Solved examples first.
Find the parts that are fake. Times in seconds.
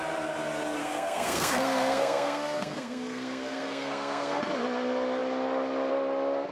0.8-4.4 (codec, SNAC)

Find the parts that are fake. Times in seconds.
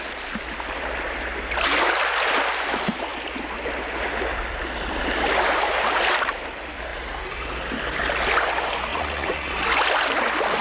8.9-9.5 (vocoder, Vocos)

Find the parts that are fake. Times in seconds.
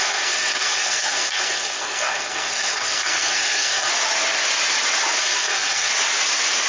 0.0-3.9 (codec, SNAC); 5.2-5.9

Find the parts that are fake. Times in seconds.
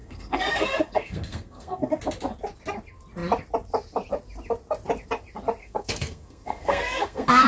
0.0-1.9 (codec, SNAC); 5.6-7.5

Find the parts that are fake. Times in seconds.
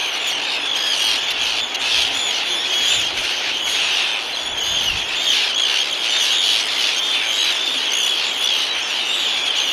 2.1-4.1 (vocoder, BigVGAN v2); 8.8-9.7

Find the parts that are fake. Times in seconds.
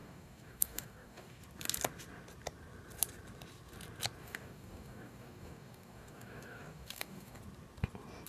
0.0-1.4 (codec, DAC); 4.2-7.4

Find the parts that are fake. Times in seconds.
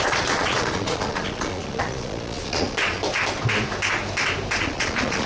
0.0-3.0 (vocoder, Vocos); 4.6-5.3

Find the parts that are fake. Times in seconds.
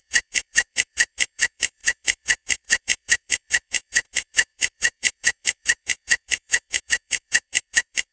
0.0-8.1 (autoencoder, DAC-VAE)